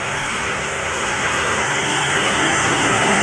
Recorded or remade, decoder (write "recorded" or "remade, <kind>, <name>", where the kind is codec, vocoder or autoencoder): remade, codec, SNAC